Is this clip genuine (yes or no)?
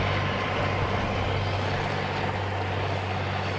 yes